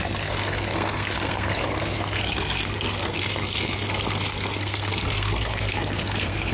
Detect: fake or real fake